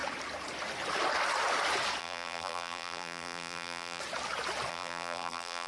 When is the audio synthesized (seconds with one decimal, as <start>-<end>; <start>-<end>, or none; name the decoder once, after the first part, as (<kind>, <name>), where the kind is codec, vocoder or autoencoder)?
2.0-4.0 (vocoder, BigVGAN v2); 4.7-5.7

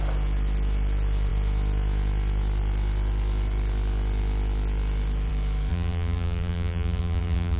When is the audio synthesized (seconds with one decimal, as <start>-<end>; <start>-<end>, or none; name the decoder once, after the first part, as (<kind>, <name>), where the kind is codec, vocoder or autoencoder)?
5.7-7.6 (vocoder, BigVGAN v2)